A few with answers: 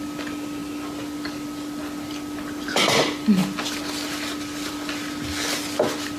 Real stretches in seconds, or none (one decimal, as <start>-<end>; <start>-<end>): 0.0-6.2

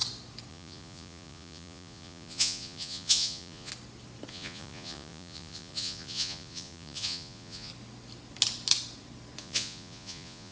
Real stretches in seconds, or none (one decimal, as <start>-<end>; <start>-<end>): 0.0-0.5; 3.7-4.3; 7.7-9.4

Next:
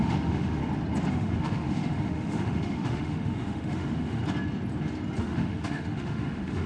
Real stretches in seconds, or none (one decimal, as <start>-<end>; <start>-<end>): 0.6-1.1; 4.2-5.2